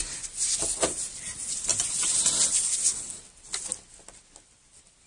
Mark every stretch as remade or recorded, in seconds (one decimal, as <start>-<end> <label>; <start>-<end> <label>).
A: 0.0-5.1 recorded